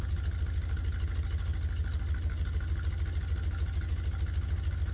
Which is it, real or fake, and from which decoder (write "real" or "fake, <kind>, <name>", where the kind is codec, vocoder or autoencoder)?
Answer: real